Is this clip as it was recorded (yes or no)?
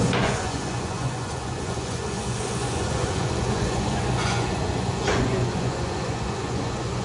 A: no